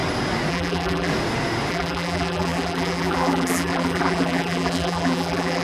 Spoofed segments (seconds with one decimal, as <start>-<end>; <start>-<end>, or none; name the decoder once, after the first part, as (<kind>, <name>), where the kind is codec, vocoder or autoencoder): 0.5-1.1 (vocoder, BigVGAN v2); 1.7-5.6